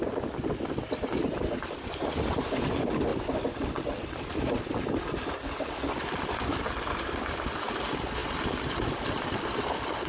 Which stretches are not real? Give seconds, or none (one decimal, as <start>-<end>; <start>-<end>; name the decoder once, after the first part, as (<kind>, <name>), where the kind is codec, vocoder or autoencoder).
none